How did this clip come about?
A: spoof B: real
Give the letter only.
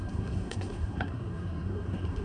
A